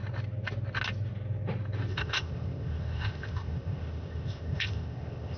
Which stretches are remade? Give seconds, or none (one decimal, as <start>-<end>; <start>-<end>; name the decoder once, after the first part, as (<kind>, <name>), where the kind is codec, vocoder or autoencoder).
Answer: 1.9-5.4 (codec, ZipCodec)